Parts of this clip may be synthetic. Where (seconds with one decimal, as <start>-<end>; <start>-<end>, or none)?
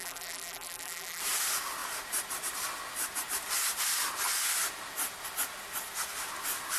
0.0-1.2